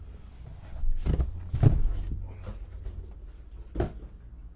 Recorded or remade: recorded